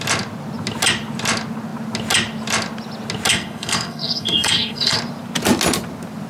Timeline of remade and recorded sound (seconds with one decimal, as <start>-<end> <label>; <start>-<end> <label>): 0.0-3.3 recorded; 3.3-5.0 remade; 5.0-6.3 recorded